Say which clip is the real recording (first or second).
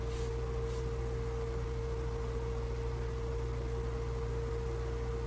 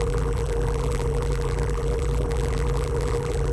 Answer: first